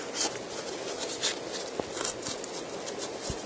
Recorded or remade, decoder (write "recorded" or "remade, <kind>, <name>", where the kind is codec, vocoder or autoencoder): recorded